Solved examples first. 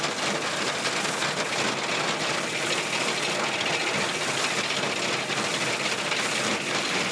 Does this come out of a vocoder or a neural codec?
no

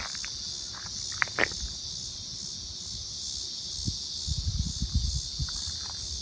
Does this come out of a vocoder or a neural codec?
no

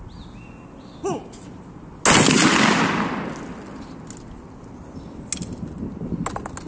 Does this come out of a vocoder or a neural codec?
no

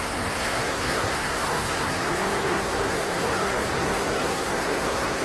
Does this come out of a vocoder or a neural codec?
yes